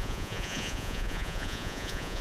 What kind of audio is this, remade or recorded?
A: remade